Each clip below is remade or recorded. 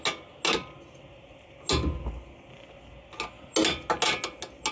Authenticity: recorded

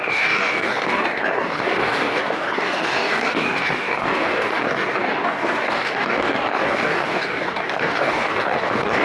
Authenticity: remade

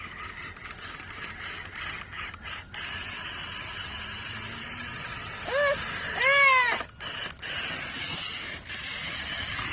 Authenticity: recorded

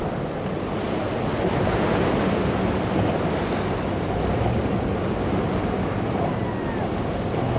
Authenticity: recorded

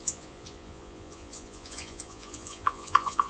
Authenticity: remade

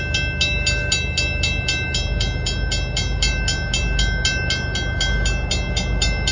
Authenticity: recorded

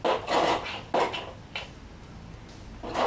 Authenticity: recorded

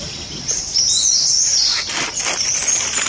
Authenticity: recorded